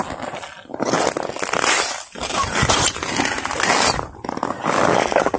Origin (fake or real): real